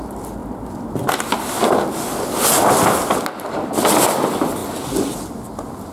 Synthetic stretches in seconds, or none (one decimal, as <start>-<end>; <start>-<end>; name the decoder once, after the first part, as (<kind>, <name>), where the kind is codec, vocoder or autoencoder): none